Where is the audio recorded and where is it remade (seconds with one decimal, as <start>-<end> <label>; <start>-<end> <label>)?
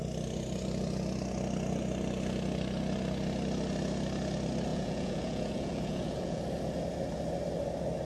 0.0-4.7 recorded; 4.7-6.4 remade; 6.4-8.0 recorded